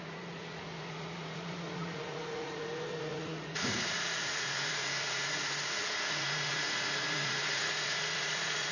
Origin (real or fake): fake